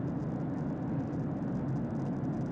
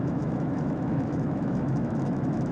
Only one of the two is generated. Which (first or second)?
second